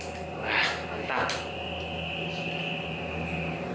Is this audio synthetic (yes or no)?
no